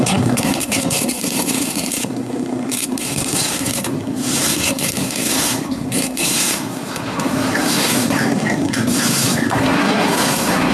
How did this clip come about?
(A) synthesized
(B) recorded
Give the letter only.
A